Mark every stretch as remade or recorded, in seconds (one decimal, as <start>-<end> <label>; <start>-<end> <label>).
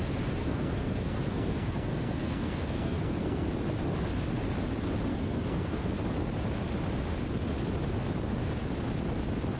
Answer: 0.0-0.4 recorded; 0.4-3.5 remade; 3.5-5.1 recorded; 5.1-5.9 remade; 5.9-9.6 recorded